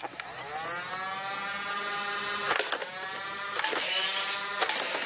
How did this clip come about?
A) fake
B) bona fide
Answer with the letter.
B